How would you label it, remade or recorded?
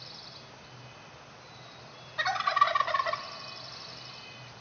recorded